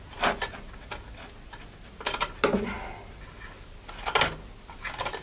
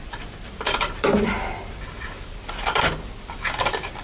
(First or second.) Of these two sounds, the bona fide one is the first